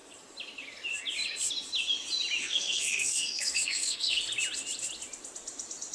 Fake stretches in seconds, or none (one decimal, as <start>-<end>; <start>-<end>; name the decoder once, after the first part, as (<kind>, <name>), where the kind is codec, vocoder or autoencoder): 2.4-4.2 (codec, SNAC)